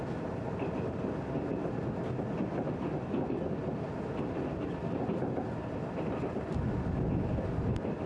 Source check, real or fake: real